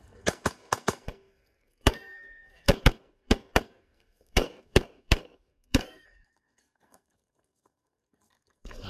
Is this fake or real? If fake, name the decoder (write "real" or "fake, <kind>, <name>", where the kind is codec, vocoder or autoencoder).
fake, codec, SNAC